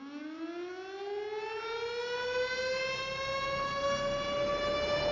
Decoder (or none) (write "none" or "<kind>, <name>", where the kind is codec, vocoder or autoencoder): none